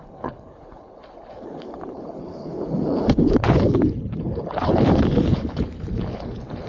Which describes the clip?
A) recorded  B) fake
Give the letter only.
B